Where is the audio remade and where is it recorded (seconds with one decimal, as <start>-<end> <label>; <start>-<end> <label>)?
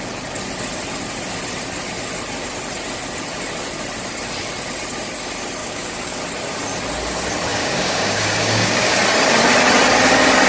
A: 0.0-5.6 recorded; 5.6-6.2 remade; 6.2-7.5 recorded; 7.5-9.0 remade; 9.0-10.5 recorded